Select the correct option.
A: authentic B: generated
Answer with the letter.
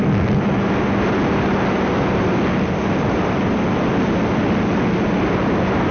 A